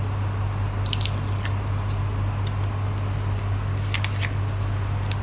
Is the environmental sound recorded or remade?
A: recorded